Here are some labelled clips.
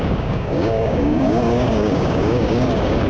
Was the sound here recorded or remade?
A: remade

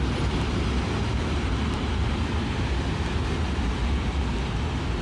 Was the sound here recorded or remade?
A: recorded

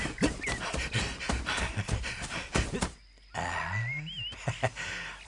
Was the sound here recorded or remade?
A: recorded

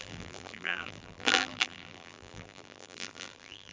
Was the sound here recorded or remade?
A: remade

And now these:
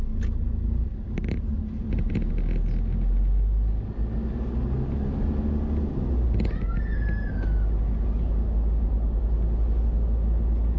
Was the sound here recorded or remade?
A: recorded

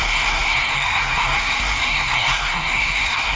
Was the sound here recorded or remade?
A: remade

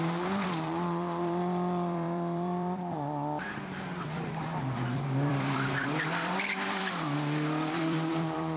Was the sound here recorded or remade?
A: remade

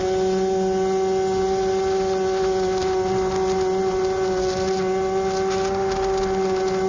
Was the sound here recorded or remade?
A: recorded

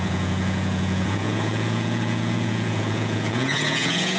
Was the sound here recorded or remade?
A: remade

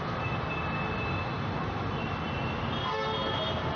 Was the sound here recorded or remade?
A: recorded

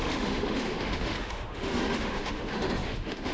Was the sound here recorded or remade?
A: remade